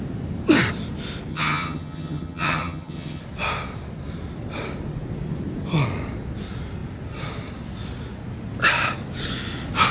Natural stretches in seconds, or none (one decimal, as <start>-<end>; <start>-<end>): 0.0-1.3; 3.2-9.9